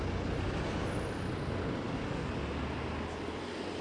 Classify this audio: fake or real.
real